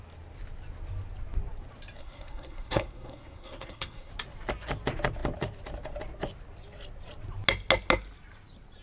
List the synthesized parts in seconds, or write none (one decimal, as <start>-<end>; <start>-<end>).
2.0-4.1